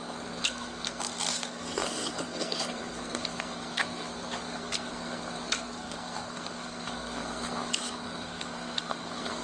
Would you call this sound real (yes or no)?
no